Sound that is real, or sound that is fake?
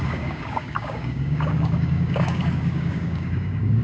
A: fake